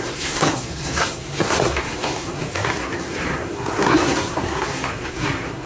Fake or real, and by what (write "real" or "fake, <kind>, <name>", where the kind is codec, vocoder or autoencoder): fake, codec, SNAC